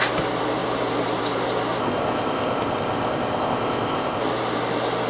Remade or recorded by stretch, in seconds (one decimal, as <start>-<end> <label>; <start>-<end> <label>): 0.0-1.8 recorded; 1.8-4.2 remade; 4.2-5.1 recorded